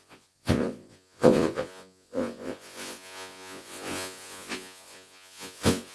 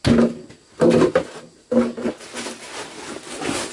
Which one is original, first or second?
second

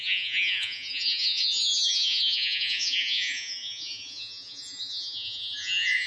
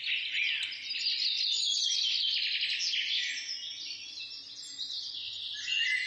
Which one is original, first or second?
second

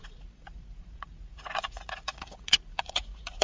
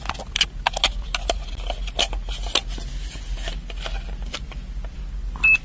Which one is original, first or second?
second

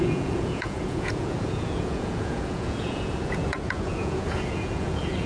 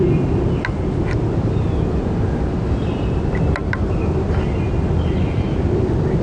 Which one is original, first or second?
second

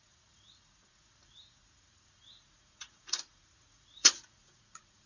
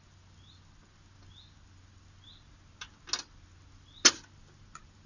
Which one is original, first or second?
second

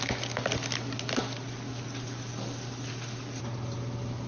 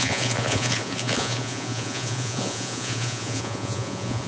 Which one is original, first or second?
first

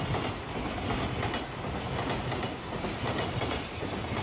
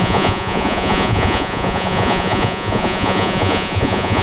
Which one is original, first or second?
first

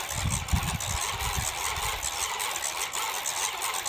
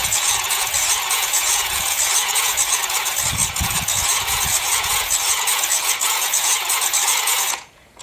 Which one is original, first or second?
first